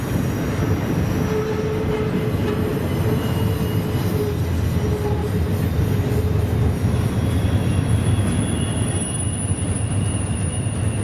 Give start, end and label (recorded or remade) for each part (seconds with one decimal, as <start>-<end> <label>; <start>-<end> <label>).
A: 0.0-11.0 recorded